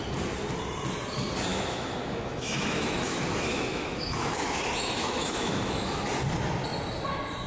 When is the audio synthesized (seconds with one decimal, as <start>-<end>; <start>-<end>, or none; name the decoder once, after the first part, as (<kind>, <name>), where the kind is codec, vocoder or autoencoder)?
1.5-6.0 (autoencoder, DAC-VAE)